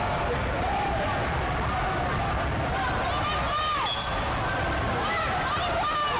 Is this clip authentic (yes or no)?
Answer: yes